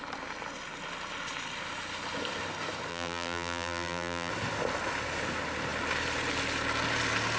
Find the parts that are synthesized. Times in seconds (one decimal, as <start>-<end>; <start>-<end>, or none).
2.9-4.3